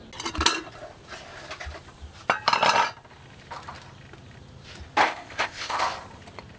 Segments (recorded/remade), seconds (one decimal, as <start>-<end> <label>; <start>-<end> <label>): 0.0-5.0 recorded; 5.0-5.8 remade; 5.8-6.6 recorded